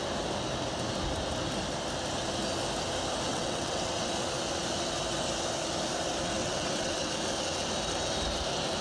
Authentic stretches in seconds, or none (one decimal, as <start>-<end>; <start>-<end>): 0.0-3.3; 4.1-6.4; 7.1-8.8